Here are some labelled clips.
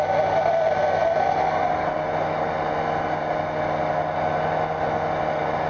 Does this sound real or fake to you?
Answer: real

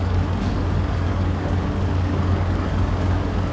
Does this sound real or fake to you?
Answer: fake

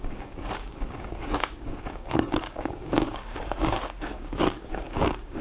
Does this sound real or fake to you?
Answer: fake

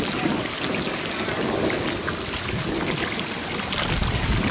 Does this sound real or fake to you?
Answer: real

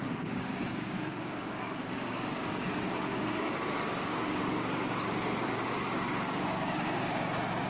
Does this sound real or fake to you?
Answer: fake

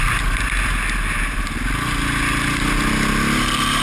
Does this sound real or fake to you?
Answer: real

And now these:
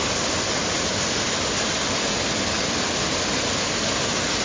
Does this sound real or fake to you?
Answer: real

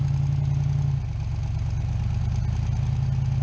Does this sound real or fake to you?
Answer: real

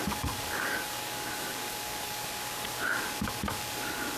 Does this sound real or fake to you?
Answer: fake